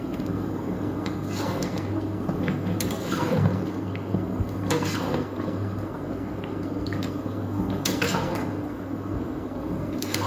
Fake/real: fake